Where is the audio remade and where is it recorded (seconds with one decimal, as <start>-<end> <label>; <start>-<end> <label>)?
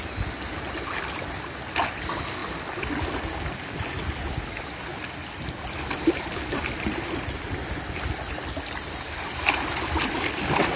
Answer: 0.0-10.8 recorded